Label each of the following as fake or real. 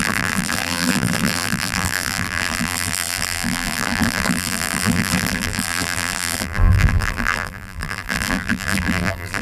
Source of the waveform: fake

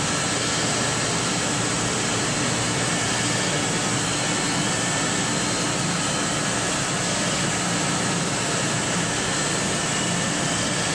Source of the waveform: real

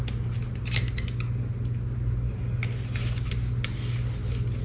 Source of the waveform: real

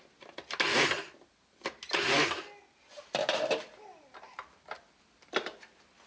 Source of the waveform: real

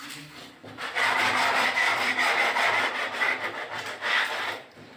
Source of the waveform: fake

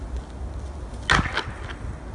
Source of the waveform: real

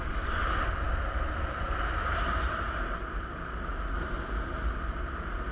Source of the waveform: real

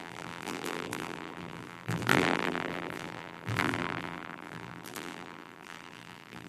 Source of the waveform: fake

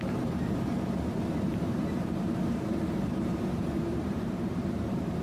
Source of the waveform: fake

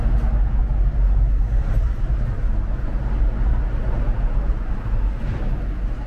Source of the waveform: real